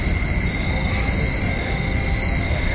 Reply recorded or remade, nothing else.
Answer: recorded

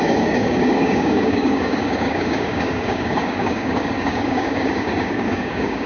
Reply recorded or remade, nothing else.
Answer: remade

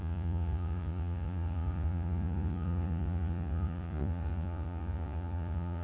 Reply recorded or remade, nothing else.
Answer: remade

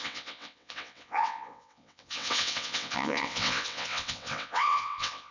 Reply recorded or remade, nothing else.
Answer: remade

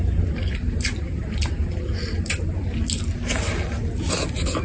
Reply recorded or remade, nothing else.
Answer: recorded